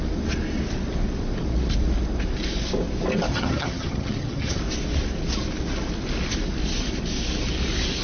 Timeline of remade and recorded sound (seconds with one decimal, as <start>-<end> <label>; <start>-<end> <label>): 0.0-3.3 recorded; 3.3-4.6 remade; 4.6-8.0 recorded